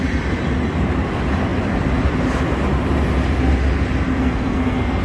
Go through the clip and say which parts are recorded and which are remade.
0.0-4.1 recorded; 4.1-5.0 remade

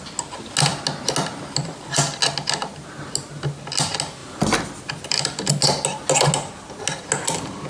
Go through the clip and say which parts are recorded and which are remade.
0.0-4.2 recorded; 4.2-5.5 remade; 5.5-7.7 recorded

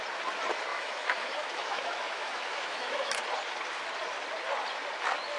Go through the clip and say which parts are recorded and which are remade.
0.0-0.7 recorded; 0.7-3.2 remade; 3.2-5.4 recorded